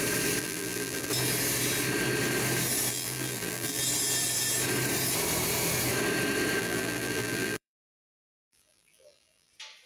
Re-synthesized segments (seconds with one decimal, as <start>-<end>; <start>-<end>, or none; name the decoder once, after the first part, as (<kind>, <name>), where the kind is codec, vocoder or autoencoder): 0.4-1.1 (vocoder, BigVGAN v2); 2.9-3.8; 6.6-9.5